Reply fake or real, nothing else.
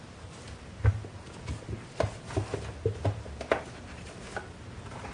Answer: real